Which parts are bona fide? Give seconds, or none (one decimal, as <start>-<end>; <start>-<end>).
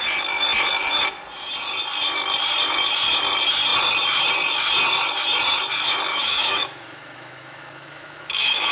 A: 0.0-6.1